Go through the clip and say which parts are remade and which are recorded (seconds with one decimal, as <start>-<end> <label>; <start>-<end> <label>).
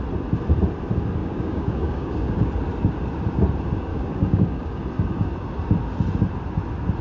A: 0.0-1.2 recorded; 1.2-2.5 remade; 2.5-3.9 recorded; 3.9-4.8 remade; 4.8-7.0 recorded